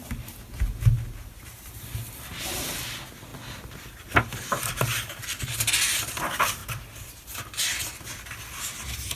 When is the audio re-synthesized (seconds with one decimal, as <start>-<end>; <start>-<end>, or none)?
6.6-7.3